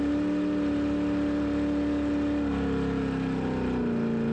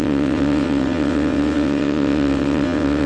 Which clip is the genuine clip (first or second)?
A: first